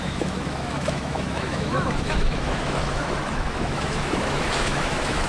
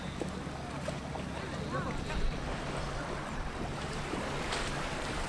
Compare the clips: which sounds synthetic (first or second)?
first